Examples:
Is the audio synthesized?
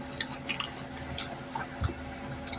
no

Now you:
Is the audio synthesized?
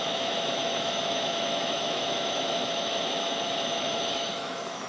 yes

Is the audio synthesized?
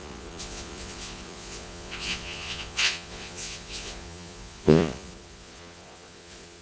yes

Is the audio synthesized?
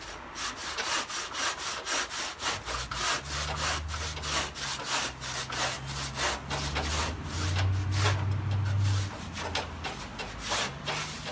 no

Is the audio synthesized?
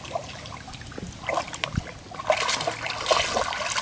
no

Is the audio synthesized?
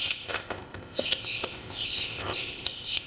yes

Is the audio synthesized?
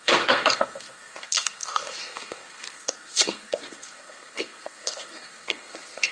yes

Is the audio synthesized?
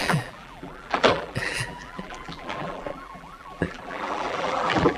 yes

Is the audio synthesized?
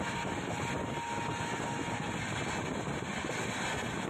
no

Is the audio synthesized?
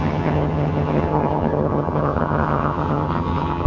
yes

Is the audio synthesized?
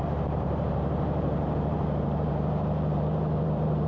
yes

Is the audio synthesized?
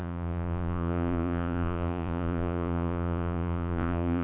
yes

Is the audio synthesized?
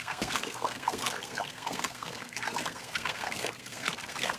yes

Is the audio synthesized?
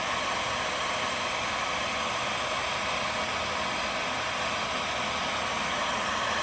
no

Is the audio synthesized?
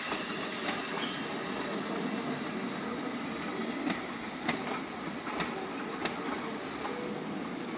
no